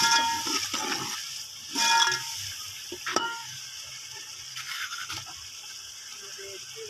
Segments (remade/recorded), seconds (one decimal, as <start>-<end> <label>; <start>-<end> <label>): 0.0-3.1 recorded; 3.1-3.6 remade; 3.6-4.5 recorded; 4.5-5.1 remade; 5.1-6.9 recorded